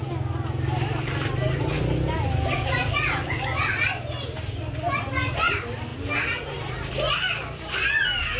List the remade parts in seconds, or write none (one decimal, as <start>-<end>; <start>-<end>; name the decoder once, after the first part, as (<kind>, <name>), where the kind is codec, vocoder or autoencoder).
none